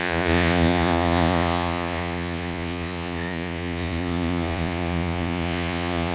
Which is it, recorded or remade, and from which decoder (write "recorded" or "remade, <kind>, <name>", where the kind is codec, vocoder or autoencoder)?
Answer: remade, vocoder, Vocos